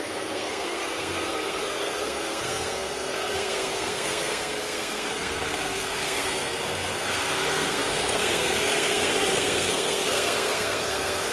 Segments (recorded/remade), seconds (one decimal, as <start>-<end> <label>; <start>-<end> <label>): 0.0-11.3 remade